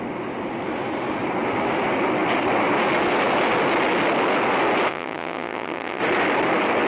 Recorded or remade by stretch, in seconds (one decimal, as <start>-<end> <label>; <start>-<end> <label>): 0.0-4.9 recorded; 4.9-6.0 remade; 6.0-6.9 recorded